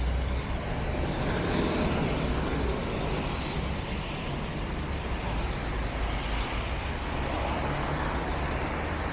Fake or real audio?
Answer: real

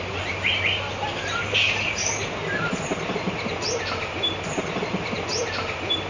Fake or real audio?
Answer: real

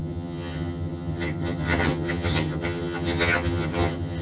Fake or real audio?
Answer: fake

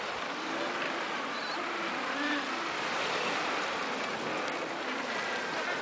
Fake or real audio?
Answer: real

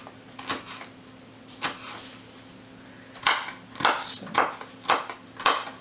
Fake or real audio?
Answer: real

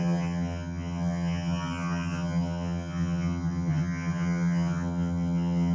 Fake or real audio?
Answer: fake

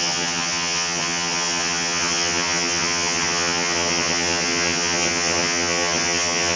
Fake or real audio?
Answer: fake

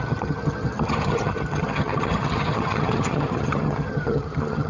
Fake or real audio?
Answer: fake